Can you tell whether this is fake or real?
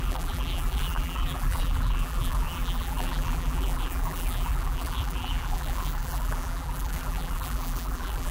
fake